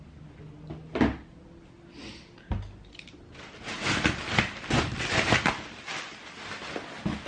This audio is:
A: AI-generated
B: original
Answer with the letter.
B